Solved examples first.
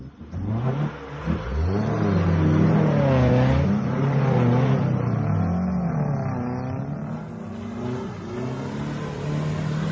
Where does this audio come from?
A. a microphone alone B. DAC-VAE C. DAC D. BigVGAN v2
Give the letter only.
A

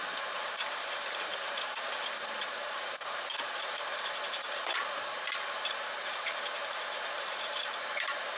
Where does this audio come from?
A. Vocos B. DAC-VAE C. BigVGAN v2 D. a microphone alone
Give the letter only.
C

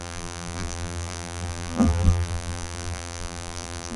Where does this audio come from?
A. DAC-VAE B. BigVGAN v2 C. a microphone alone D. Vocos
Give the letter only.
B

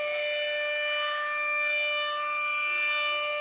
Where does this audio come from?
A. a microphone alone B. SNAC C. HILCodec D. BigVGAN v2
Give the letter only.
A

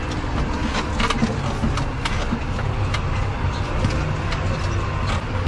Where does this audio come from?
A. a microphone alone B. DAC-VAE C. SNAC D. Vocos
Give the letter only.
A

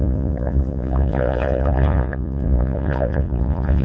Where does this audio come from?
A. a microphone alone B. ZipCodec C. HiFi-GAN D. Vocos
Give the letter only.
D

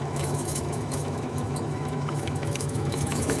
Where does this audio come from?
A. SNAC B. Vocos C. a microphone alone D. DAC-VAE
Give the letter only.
D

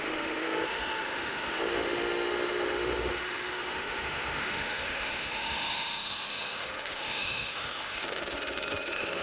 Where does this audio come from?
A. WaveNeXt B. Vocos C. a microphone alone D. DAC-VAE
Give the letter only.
D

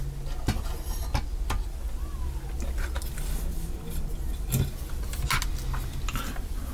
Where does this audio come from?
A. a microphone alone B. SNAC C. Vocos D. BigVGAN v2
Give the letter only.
A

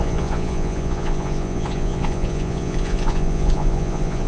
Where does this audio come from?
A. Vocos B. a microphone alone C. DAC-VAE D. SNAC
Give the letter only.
A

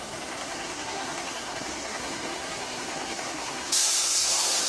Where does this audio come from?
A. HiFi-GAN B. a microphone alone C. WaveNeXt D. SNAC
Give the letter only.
D